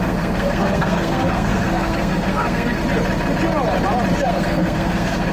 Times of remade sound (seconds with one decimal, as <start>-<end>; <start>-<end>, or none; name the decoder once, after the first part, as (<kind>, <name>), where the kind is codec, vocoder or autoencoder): 0.0-2.8 (codec, SNAC); 4.2-5.3

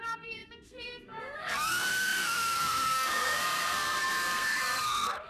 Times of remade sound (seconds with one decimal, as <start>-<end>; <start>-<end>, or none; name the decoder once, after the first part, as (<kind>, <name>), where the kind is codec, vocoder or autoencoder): 0.0-5.3 (codec, SNAC)

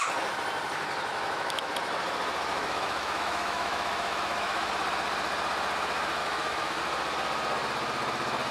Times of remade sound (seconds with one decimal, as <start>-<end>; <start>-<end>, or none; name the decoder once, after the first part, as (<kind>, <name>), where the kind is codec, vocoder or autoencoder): 1.1-1.7 (autoencoder, DAC-VAE); 2.5-4.7; 6.2-6.8